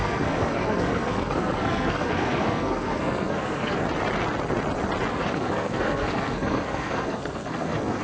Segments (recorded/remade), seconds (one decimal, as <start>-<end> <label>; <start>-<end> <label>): 0.0-3.8 remade; 3.8-5.1 recorded; 5.1-8.0 remade